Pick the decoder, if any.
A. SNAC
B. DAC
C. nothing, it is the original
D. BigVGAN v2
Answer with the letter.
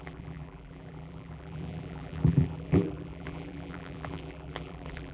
D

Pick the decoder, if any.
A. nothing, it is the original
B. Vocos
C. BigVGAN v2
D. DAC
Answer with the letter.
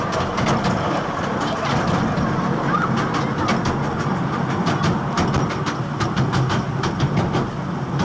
A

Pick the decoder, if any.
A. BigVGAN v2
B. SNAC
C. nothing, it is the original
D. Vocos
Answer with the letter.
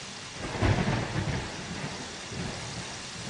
C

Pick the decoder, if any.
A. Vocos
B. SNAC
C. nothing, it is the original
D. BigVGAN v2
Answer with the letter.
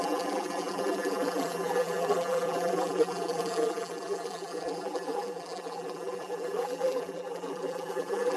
D